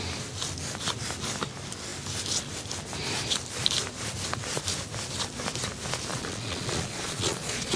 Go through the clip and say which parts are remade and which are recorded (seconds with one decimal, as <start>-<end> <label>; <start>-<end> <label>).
0.0-6.1 recorded; 6.1-7.8 remade